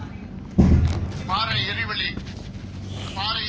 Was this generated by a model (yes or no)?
no